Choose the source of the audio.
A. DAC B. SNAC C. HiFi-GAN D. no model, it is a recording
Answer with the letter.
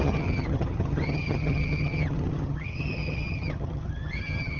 C